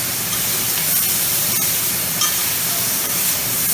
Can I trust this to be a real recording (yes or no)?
no